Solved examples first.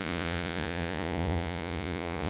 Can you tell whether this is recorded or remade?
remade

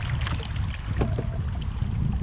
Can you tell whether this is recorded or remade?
recorded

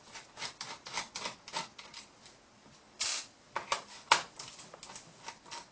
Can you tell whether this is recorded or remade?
recorded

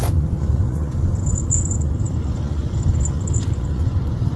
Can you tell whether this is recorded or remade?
remade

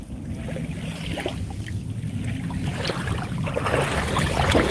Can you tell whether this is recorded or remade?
recorded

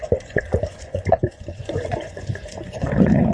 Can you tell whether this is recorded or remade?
remade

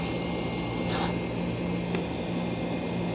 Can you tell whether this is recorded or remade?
recorded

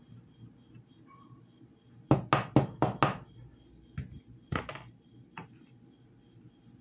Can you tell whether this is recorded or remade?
recorded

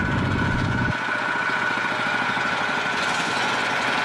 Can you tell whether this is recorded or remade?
remade